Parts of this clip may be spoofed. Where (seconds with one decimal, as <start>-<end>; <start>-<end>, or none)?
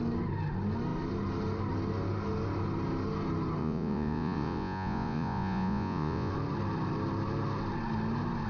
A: 3.6-6.3